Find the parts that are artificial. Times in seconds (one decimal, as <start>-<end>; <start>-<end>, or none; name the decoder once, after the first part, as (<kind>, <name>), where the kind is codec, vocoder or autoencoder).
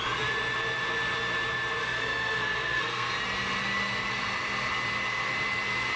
1.8-3.1 (codec, SNAC)